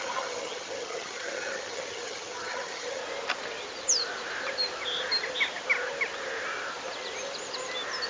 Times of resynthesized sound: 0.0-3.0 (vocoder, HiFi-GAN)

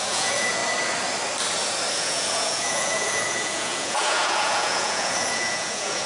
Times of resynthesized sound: 0.0-0.6 (vocoder, Vocos); 1.9-6.1

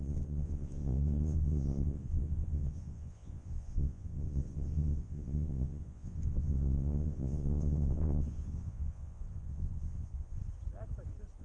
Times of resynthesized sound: 0.0-10.4 (vocoder, Vocos)

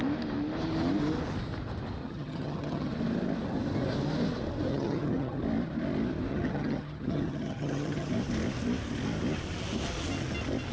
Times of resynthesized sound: 2.0-2.9 (vocoder, HiFi-GAN); 4.7-5.4; 6.3-8.1